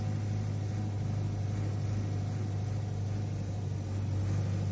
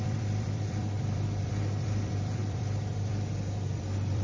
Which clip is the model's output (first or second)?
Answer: second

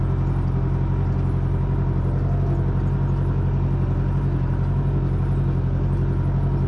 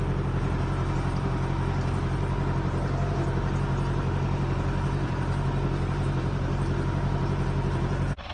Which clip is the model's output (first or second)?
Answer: second